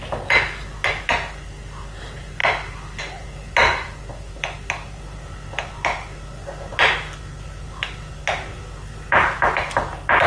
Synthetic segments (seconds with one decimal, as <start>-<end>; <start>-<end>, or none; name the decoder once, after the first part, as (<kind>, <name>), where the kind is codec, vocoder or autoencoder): none